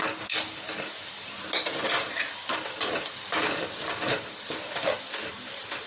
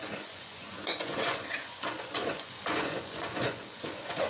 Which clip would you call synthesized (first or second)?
second